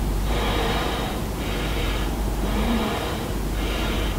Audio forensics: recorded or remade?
remade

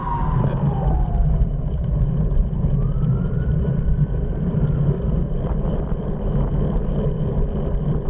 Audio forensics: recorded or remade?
remade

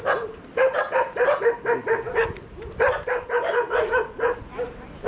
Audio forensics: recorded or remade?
recorded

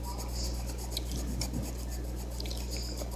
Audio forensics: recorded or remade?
recorded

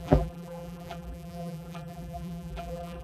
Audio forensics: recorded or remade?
remade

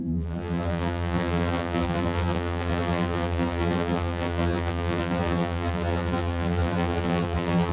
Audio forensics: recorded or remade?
remade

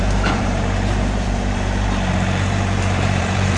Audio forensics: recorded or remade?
remade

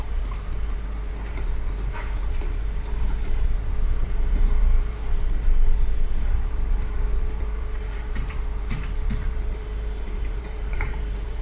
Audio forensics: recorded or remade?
remade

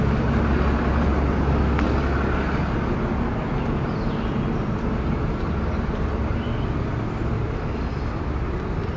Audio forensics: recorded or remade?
recorded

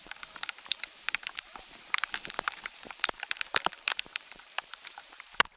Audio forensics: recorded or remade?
remade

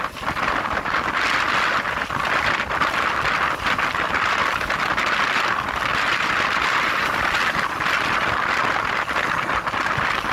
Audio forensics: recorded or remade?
recorded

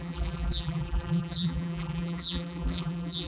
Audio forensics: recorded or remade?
remade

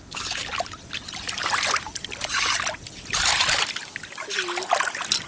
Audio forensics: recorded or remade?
recorded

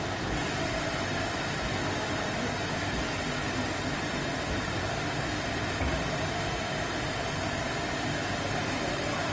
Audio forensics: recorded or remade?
recorded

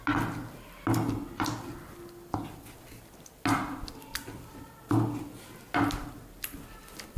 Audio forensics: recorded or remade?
recorded